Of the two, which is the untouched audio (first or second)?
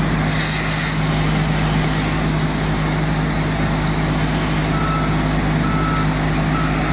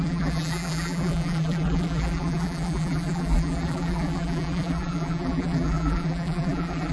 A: first